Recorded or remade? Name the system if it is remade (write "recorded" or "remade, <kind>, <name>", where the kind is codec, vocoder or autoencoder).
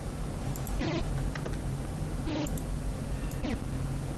recorded